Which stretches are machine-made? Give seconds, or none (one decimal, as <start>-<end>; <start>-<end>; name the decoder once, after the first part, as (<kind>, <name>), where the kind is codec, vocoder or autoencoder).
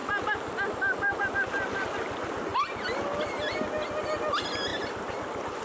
none